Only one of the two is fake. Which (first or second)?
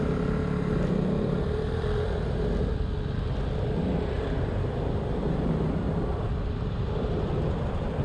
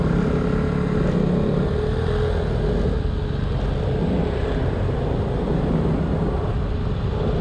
first